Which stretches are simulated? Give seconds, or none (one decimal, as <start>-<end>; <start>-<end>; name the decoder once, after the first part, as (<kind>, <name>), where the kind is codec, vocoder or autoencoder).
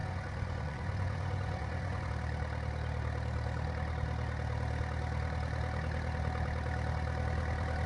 0.0-2.1 (vocoder, Vocos)